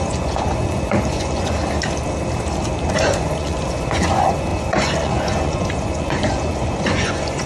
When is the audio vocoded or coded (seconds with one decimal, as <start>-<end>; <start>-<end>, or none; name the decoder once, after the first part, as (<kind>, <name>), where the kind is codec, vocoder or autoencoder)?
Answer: 0.0-1.6 (vocoder, Vocos); 2.9-7.5